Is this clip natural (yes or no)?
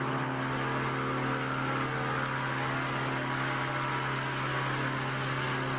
yes